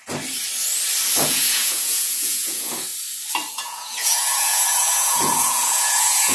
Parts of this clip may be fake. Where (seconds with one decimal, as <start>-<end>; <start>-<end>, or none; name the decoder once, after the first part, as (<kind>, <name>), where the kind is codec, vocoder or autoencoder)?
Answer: 1.2-2.9 (vocoder, Vocos); 3.5-6.3